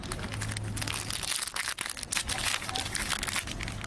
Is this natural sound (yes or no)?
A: yes